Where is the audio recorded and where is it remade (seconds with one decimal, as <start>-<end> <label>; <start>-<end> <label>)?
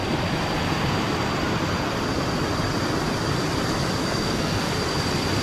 0.0-4.0 recorded; 4.0-4.7 remade; 4.7-5.4 recorded